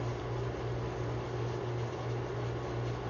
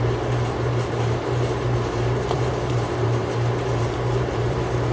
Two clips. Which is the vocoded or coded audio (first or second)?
second